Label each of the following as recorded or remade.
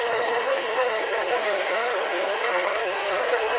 remade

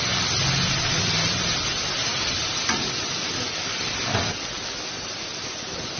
recorded